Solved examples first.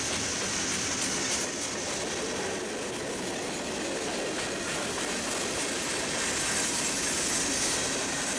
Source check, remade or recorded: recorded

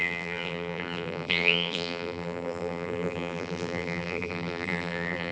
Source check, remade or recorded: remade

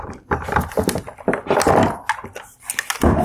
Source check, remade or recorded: recorded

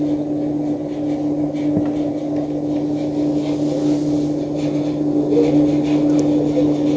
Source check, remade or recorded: recorded